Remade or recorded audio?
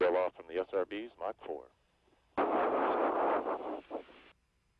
recorded